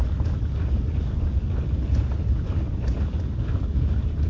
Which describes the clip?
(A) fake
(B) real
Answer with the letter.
B